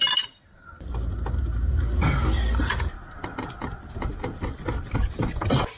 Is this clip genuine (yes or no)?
no